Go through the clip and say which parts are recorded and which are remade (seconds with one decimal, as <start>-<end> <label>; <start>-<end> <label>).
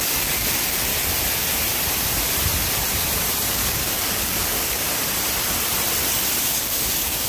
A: 0.0-0.9 remade; 0.9-3.5 recorded; 3.5-4.8 remade; 4.8-6.4 recorded; 6.4-7.3 remade